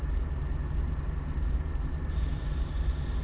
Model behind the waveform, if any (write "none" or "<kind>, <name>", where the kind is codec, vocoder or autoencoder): vocoder, BigVGAN v2